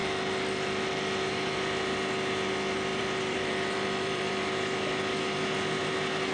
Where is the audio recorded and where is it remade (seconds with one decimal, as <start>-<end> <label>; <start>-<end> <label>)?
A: 0.0-2.9 recorded; 2.9-4.4 remade; 4.4-6.3 recorded